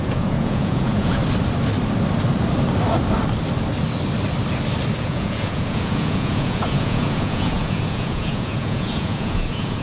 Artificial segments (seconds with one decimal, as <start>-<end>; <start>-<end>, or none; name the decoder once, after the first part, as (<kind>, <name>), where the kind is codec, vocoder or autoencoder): 0.0-1.2 (vocoder, Vocos); 5.0-9.8